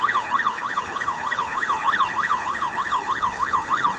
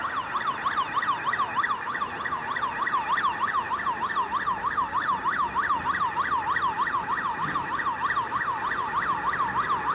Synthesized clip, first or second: first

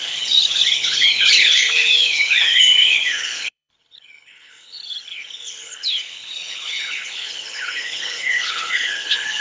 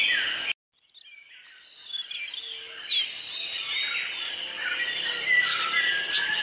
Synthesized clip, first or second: first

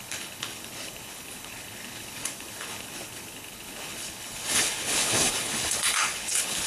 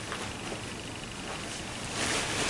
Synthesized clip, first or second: first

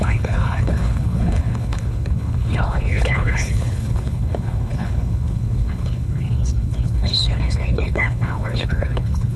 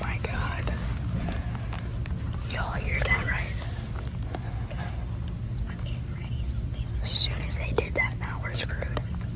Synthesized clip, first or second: first